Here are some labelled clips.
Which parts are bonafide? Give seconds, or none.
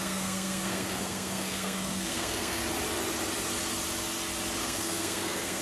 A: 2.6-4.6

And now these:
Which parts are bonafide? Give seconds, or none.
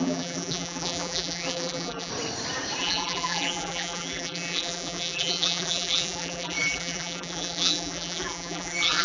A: 2.1-2.8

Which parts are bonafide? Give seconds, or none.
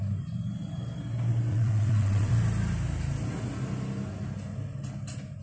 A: 0.0-1.5; 2.3-5.4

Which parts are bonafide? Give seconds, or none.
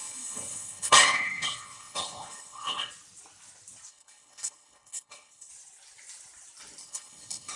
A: 2.9-3.9; 5.5-6.8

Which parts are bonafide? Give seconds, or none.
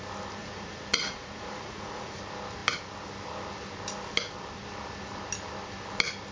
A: 0.0-0.4; 2.2-6.3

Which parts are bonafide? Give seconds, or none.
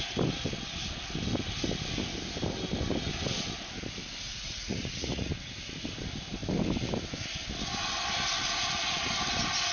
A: 0.0-4.3; 5.5-9.7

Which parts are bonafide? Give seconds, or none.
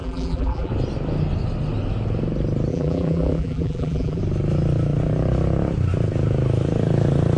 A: 0.7-2.7; 4.2-7.4